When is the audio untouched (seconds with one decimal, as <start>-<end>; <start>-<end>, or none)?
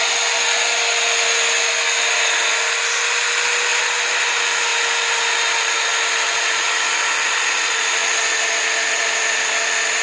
0.0-10.0